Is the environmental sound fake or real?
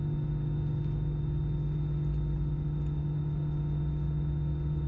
real